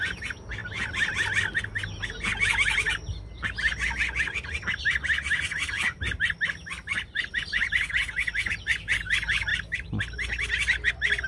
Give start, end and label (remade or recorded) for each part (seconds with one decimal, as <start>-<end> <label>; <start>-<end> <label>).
0.0-11.3 recorded